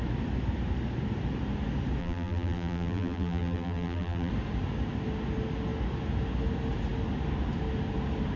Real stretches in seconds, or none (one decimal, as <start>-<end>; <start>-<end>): 0.0-2.0; 4.3-8.4